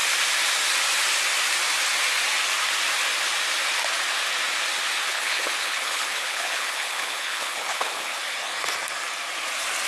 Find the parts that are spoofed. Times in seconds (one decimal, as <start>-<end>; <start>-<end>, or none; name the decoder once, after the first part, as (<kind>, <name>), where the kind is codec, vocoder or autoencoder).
5.1-8.2 (codec, HILCodec)